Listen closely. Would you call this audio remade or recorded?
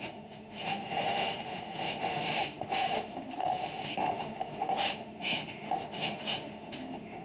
remade